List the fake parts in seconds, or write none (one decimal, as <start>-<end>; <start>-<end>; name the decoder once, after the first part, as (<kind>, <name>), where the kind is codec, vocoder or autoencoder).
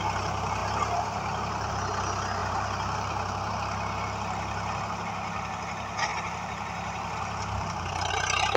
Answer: 2.4-3.5 (vocoder, BigVGAN v2); 6.1-8.1